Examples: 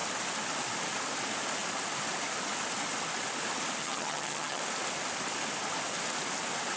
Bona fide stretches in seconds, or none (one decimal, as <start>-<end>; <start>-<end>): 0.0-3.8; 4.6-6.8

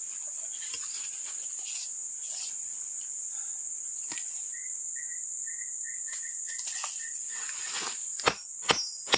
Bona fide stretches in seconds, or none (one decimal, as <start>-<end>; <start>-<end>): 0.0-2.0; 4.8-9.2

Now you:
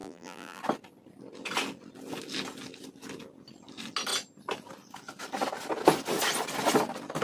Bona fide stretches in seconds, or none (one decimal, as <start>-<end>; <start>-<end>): 0.6-7.2

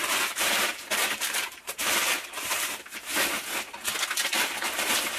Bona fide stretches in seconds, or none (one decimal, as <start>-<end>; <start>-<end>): 3.1-5.2